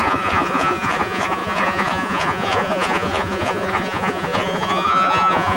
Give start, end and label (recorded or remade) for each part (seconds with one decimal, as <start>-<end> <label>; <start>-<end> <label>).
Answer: 0.0-5.6 remade